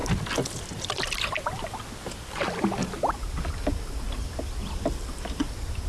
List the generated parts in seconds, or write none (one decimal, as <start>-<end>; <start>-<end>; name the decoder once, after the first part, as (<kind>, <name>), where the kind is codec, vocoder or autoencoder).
none